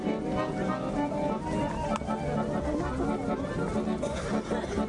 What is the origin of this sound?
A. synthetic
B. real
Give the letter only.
B